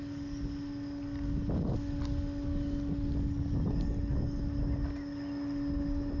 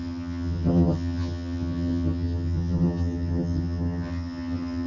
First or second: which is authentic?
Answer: first